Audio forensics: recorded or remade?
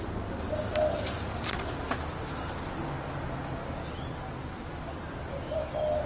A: recorded